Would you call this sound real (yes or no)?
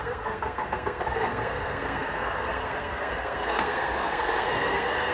no